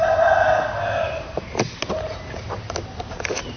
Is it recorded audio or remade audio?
recorded